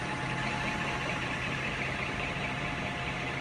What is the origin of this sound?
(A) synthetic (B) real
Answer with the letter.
A